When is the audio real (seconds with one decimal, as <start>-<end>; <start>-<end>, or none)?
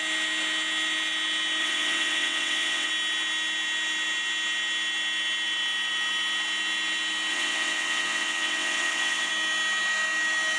0.0-1.6; 2.9-7.3; 9.3-10.6